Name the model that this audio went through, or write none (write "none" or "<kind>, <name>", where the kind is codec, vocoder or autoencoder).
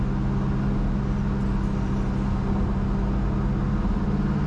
none